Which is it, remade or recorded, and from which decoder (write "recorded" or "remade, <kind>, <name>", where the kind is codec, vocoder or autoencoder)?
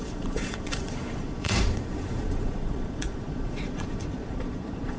remade, vocoder, Vocos